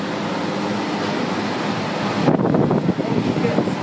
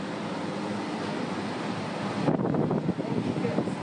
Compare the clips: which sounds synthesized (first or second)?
second